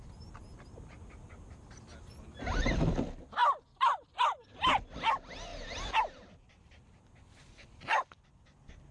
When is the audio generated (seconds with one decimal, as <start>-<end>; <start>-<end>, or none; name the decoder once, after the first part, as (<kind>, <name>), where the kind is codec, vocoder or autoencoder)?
none